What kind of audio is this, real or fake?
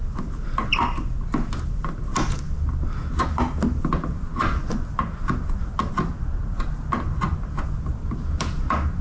real